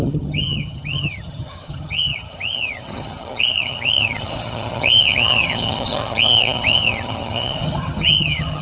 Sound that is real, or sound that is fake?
fake